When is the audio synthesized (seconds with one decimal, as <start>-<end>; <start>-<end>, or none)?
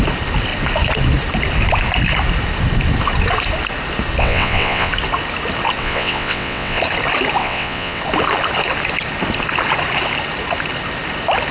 4.2-4.9; 5.8-6.8; 7.4-8.0